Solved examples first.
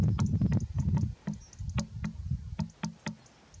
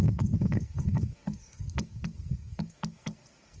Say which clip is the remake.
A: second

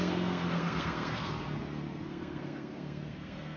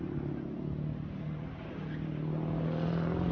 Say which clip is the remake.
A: first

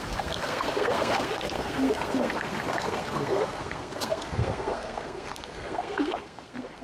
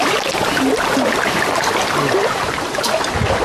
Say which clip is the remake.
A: first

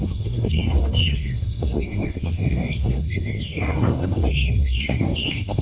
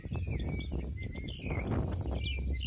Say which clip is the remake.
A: first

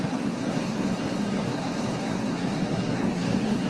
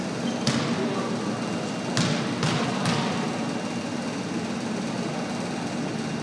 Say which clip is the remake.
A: first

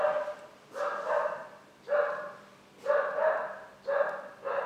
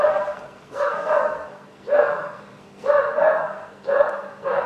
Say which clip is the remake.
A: second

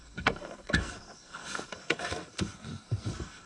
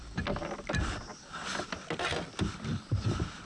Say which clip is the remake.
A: first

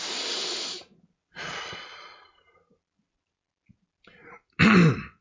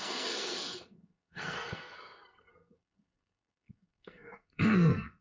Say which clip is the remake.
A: second